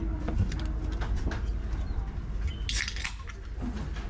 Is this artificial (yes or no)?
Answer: no